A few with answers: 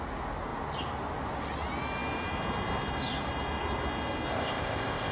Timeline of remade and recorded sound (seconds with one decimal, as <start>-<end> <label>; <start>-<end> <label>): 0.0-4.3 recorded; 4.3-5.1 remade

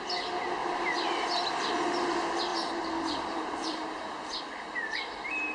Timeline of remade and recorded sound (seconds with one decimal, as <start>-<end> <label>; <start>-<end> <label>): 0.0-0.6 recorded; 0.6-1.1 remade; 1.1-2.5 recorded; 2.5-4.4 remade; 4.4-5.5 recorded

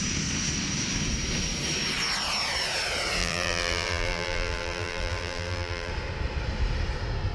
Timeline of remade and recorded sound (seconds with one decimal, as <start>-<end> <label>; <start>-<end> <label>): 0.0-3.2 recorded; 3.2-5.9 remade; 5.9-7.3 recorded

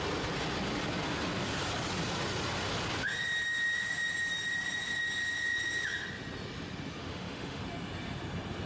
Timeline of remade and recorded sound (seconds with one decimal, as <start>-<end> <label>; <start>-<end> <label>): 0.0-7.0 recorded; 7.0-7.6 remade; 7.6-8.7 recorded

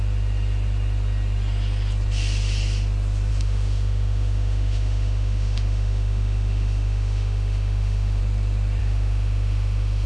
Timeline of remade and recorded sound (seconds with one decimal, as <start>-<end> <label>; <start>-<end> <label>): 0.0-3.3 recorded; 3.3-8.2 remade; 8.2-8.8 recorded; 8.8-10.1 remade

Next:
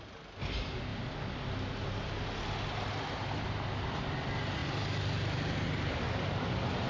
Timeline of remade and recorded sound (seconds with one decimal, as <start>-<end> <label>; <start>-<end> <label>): 0.0-6.9 recorded

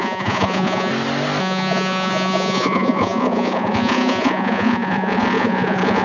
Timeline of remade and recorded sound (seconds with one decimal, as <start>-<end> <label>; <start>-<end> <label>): 0.0-0.9 remade; 0.9-1.4 recorded; 1.4-6.0 remade